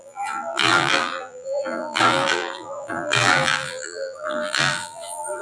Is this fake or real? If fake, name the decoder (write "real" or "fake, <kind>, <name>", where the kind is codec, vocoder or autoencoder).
fake, vocoder, BigVGAN v2